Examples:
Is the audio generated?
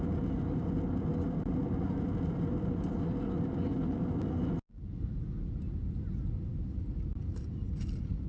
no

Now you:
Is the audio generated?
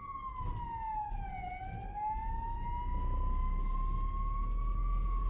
no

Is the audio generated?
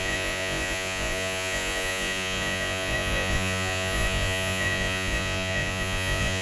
yes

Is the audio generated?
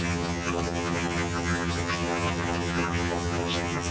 yes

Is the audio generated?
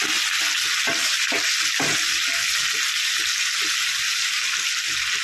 no